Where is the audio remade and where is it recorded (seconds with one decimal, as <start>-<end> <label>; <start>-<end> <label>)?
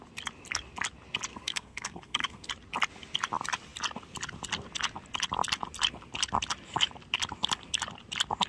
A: 0.0-1.3 recorded; 1.3-2.5 remade; 2.5-8.5 recorded